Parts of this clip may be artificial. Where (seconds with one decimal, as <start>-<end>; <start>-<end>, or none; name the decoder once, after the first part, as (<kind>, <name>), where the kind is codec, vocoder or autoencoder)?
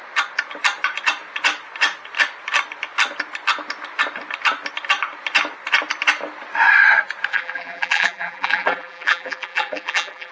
7.3-10.3 (vocoder, BigVGAN v2)